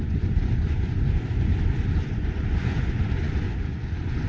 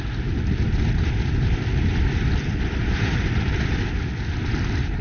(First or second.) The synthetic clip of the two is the first